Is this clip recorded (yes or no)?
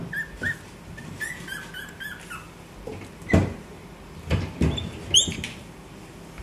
yes